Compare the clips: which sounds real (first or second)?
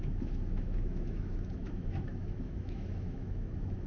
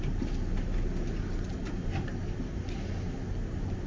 second